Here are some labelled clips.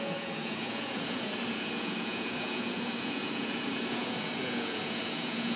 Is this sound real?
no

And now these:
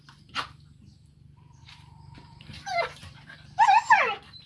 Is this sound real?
no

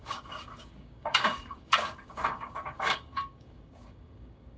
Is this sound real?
no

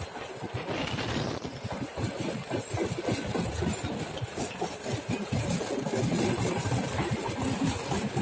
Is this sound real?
yes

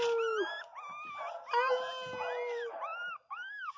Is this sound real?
yes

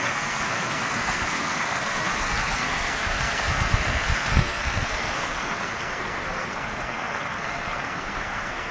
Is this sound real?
no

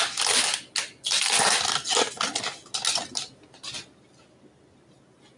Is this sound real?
yes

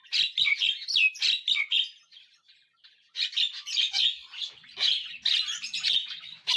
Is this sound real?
yes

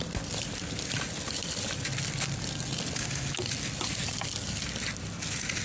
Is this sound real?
yes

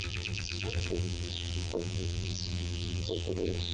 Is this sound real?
no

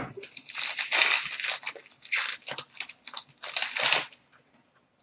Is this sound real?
yes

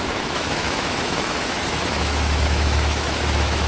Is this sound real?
no